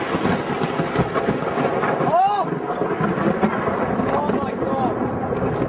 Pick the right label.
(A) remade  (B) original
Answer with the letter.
B